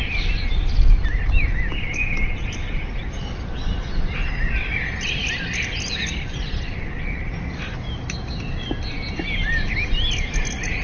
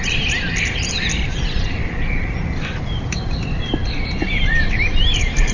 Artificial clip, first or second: second